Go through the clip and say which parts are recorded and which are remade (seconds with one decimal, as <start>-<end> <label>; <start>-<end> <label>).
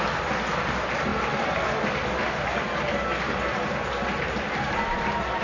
0.0-5.4 recorded